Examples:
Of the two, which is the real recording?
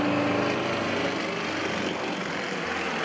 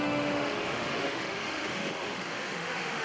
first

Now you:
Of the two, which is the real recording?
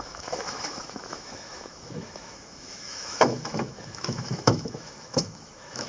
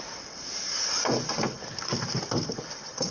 second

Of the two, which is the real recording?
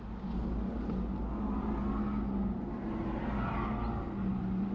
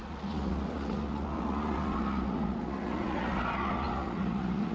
first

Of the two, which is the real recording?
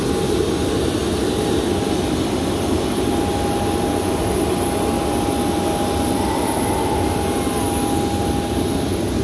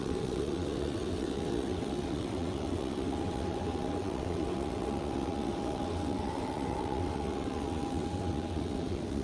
first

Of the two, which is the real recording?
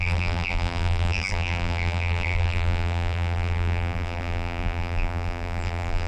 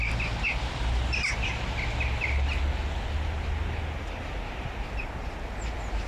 second